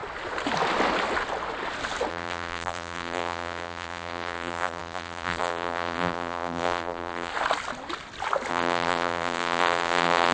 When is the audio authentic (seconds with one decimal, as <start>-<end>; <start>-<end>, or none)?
0.0-2.1; 7.3-8.5